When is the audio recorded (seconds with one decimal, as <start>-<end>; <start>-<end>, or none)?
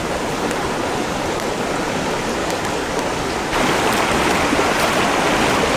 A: 0.0-2.4; 2.9-5.8